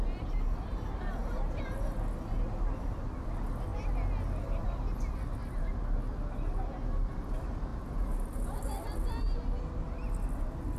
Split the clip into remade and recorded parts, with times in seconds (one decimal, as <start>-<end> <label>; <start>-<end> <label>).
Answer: 0.0-1.2 recorded; 1.2-1.7 remade; 1.7-7.7 recorded; 7.7-8.6 remade; 8.6-10.8 recorded